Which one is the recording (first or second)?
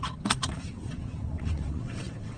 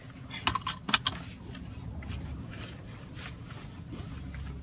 second